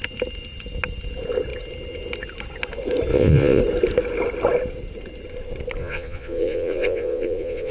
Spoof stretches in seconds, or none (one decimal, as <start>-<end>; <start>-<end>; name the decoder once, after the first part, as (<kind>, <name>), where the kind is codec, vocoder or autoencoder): 3.1-3.6 (vocoder, Vocos); 5.8-7.7